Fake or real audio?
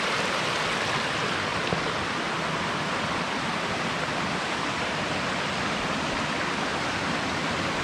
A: real